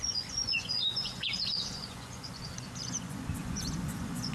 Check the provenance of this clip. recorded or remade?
remade